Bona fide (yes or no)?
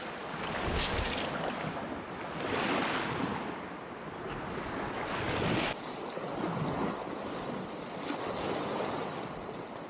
yes